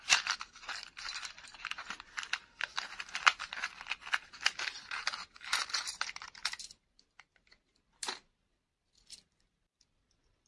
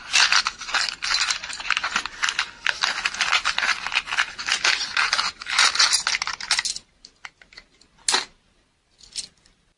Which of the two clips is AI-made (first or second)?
first